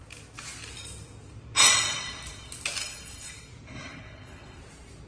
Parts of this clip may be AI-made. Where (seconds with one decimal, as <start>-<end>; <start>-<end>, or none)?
2.8-3.5; 3.9-4.6